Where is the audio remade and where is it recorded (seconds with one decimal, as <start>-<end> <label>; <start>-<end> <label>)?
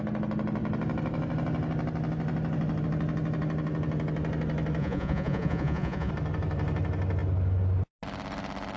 0.0-4.8 recorded; 4.8-6.1 remade; 6.1-8.8 recorded